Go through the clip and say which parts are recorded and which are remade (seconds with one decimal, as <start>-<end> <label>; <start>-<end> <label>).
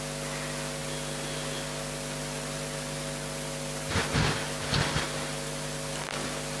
0.0-6.6 recorded